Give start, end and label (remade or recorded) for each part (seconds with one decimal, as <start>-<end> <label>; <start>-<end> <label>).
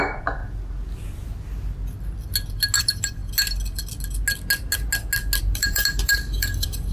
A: 0.0-0.4 remade; 0.4-2.8 recorded; 2.8-3.2 remade; 3.2-5.4 recorded; 5.4-6.9 remade